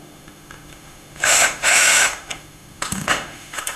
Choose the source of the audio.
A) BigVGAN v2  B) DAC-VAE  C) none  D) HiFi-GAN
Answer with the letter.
B